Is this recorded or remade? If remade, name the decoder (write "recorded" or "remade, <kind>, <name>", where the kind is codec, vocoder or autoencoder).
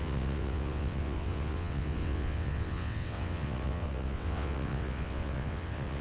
remade, vocoder, WaveNeXt